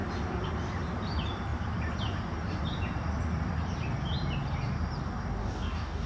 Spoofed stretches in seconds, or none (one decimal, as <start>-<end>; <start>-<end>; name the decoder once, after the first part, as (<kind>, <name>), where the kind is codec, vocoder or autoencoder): 5.4-6.1 (codec, DAC)

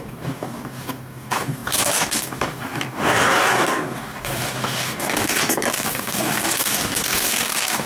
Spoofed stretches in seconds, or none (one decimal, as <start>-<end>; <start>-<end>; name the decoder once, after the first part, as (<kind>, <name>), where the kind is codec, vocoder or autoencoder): 0.0-7.9 (codec, DAC)

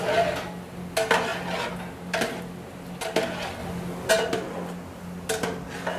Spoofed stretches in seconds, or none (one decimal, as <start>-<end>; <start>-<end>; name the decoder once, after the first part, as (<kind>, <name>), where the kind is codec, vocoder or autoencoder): none

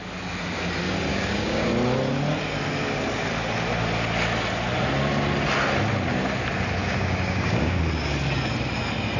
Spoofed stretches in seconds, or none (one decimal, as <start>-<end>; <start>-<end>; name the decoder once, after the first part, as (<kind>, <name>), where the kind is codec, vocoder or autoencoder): 1.1-1.7 (codec, DAC); 6.8-7.8